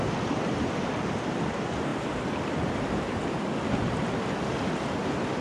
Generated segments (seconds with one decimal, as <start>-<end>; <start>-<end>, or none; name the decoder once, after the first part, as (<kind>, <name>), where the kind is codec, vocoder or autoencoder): 1.9-2.7 (vocoder, BigVGAN v2)